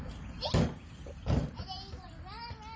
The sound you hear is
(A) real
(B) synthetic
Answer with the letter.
A